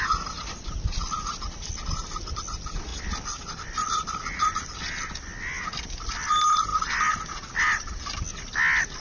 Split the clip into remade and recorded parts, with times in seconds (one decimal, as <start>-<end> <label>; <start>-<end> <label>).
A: 0.0-9.0 recorded